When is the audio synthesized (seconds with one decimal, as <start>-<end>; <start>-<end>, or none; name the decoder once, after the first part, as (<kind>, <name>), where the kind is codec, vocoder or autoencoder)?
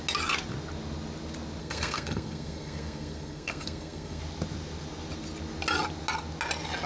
1.6-4.2 (codec, SNAC)